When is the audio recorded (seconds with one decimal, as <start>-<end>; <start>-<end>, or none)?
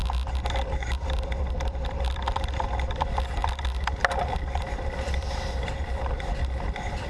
0.0-1.5; 3.4-4.4